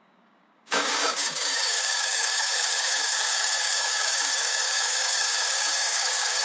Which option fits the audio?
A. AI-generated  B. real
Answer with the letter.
A